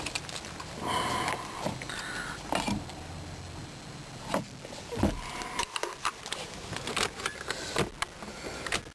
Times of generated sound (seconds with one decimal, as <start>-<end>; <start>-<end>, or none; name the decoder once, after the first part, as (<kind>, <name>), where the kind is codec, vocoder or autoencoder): none